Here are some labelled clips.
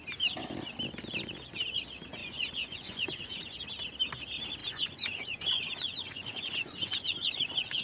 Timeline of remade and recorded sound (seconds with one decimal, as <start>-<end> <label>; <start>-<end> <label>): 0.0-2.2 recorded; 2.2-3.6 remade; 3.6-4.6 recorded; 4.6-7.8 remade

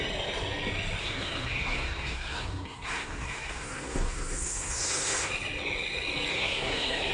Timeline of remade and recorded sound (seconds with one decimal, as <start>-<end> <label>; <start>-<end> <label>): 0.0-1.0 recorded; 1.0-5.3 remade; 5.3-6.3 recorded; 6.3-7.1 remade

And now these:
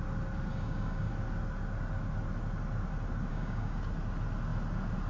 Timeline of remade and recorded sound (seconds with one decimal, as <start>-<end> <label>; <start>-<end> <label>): 0.0-0.5 recorded; 0.5-1.1 remade; 1.1-3.3 recorded; 3.3-3.8 remade; 3.8-5.1 recorded

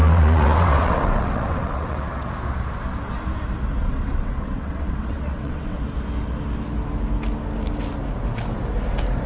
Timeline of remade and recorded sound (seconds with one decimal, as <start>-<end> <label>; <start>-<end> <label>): 0.0-2.3 remade; 2.3-3.8 recorded; 3.8-5.8 remade; 5.8-9.3 recorded